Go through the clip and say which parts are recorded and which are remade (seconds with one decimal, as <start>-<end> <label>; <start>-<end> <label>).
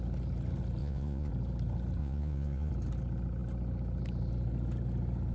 0.0-0.8 recorded; 0.8-1.3 remade; 1.3-2.0 recorded; 2.0-2.7 remade; 2.7-5.3 recorded